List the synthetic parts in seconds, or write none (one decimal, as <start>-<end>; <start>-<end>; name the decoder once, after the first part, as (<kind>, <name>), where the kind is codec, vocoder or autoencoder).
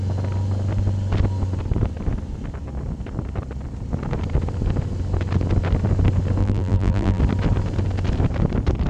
6.4-7.2 (vocoder, BigVGAN v2)